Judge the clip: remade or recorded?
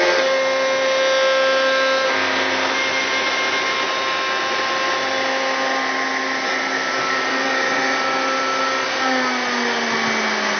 recorded